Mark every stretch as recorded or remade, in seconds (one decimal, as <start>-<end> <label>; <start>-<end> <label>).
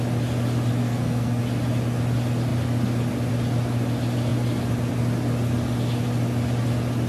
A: 0.0-0.8 recorded; 0.8-1.4 remade; 1.4-7.1 recorded